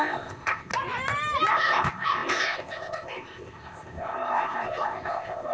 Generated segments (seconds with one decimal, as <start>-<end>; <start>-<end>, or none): 0.0-0.7; 1.5-5.5